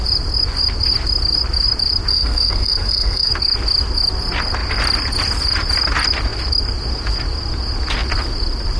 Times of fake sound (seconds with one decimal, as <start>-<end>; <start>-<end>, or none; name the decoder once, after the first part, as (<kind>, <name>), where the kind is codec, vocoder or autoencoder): 2.1-3.3 (codec, SNAC)